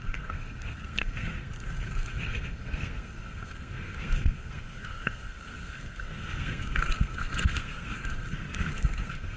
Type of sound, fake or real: fake